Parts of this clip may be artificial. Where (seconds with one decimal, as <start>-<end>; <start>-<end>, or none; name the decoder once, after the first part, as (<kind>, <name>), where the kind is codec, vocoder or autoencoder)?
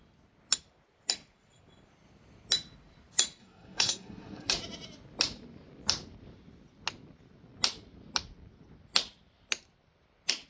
3.4-4.5 (codec, SNAC)